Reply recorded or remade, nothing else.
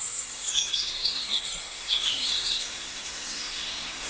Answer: remade